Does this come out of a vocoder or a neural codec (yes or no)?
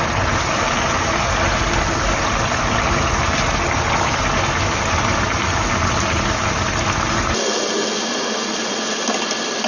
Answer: no